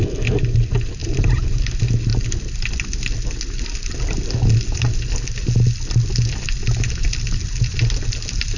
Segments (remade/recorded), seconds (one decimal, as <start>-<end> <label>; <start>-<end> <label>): 0.0-1.0 recorded; 1.0-1.6 remade; 1.6-8.6 recorded

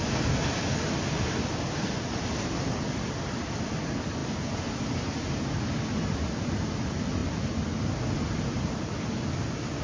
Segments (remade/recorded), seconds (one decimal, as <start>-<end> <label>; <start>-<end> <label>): 0.0-4.2 recorded; 4.2-5.4 remade; 5.4-9.8 recorded

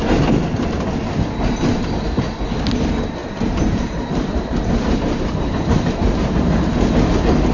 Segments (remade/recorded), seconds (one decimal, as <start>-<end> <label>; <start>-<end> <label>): 0.0-3.2 recorded; 3.2-6.3 remade; 6.3-7.5 recorded

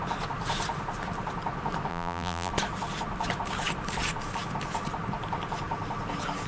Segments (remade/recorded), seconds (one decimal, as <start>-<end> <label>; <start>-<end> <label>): 0.0-1.9 recorded; 1.9-2.5 remade; 2.5-6.5 recorded

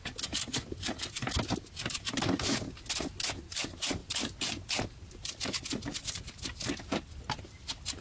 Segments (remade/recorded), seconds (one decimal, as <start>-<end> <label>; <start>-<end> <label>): 0.0-1.8 recorded; 1.8-2.6 remade; 2.6-4.0 recorded; 4.0-7.0 remade; 7.0-8.0 recorded

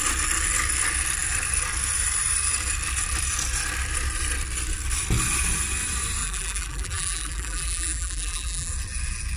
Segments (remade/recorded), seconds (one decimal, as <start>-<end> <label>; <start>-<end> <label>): 0.0-6.2 recorded; 6.2-8.7 remade; 8.7-9.4 recorded